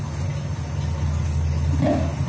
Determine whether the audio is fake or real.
real